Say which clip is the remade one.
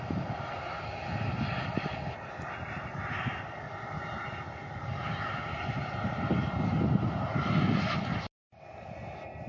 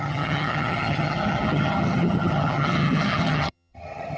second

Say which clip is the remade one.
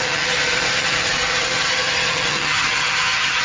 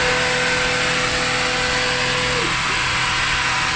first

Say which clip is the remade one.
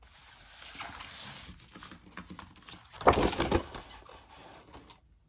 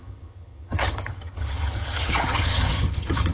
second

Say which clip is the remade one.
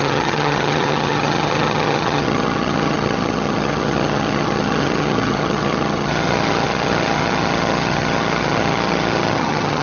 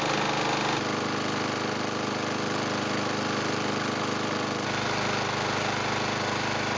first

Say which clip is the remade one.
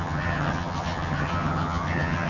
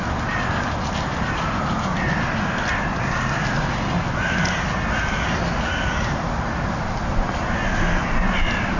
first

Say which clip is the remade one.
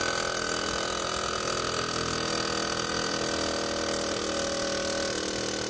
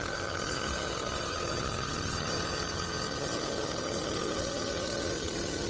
second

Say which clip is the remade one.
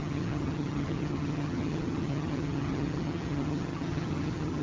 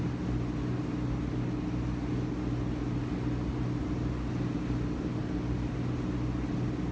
first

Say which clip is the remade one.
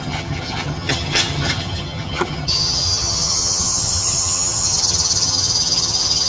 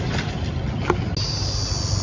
first